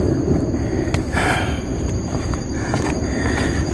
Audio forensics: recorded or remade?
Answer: remade